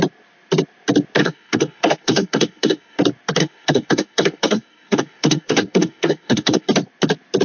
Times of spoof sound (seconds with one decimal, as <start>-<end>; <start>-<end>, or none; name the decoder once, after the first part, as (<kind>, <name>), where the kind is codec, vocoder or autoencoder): 1.2-3.0 (codec, SNAC); 3.4-6.7